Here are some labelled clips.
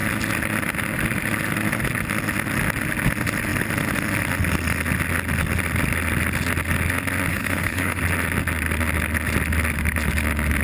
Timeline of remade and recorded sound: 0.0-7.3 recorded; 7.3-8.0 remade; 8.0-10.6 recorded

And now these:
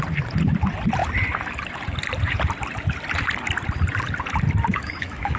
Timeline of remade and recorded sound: 0.0-4.7 recorded; 4.7-5.4 remade

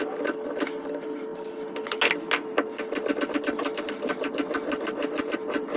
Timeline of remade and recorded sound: 0.0-5.8 recorded

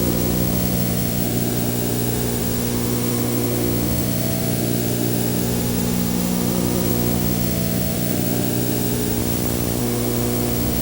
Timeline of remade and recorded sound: 0.0-9.2 remade; 9.2-9.8 recorded; 9.8-10.8 remade

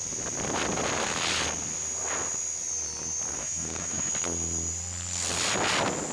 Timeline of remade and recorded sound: 0.0-3.4 recorded; 3.4-4.1 remade; 4.1-6.1 recorded

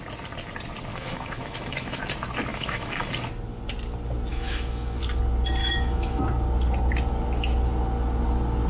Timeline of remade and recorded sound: 0.0-0.9 recorded; 0.9-2.0 remade; 2.0-2.5 recorded; 2.5-3.1 remade; 3.1-4.3 recorded; 4.3-5.0 remade; 5.0-5.6 recorded; 5.6-6.2 remade; 6.2-8.7 recorded

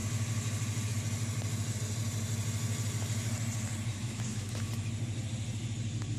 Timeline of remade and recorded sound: 0.0-3.9 recorded; 3.9-4.9 remade; 4.9-6.2 recorded

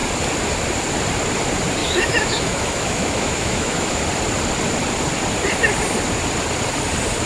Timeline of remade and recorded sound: 0.0-1.8 recorded; 1.8-4.0 remade; 4.0-7.3 recorded